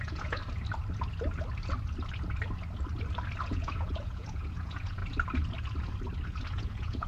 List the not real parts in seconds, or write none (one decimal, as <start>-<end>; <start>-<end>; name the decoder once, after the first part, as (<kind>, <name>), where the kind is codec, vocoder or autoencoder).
0.0-0.4 (vocoder, Vocos); 3.4-5.0; 6.5-7.1